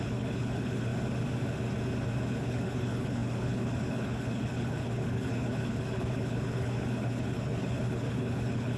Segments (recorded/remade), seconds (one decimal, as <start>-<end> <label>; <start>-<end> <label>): 0.0-0.9 remade; 0.9-2.2 recorded; 2.2-8.8 remade